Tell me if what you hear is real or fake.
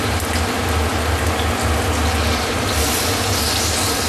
real